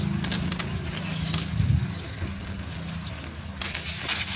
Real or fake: real